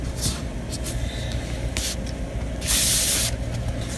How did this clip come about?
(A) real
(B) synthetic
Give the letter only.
A